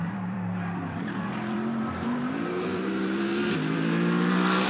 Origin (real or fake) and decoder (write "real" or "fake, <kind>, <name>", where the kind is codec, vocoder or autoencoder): fake, vocoder, BigVGAN v2